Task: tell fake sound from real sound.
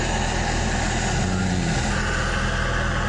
real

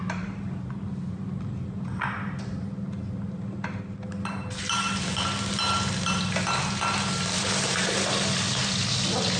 real